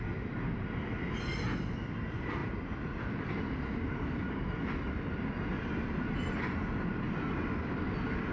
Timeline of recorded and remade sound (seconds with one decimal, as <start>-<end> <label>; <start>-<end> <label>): 0.0-8.3 recorded